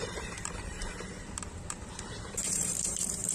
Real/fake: fake